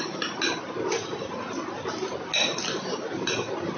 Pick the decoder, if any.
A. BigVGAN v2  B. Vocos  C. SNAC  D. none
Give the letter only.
D